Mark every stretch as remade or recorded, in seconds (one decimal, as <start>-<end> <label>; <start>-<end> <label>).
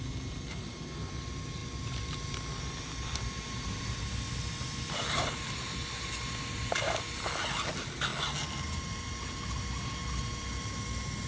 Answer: 0.0-11.3 recorded